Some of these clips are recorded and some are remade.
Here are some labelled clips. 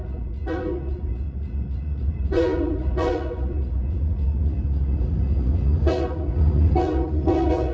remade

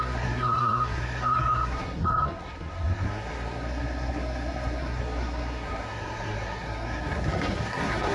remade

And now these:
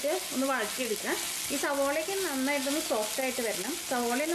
recorded